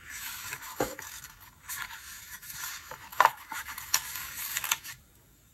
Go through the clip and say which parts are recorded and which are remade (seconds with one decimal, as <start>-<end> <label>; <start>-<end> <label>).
0.0-5.5 remade